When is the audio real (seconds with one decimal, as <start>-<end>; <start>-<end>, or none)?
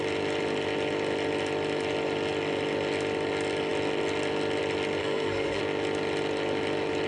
0.0-5.0; 5.6-7.1